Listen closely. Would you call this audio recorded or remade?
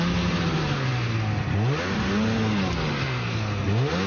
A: recorded